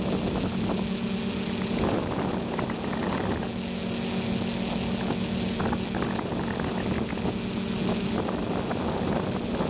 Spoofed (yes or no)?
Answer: no